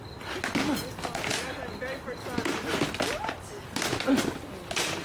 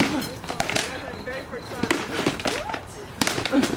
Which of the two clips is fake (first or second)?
second